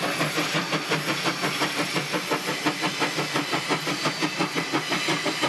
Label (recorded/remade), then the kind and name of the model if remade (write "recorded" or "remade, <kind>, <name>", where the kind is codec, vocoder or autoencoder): recorded